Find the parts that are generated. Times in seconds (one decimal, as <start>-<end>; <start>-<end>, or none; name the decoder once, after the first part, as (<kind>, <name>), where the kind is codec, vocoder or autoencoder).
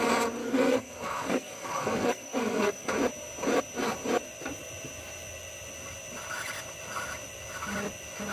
0.4-2.9 (codec, SNAC)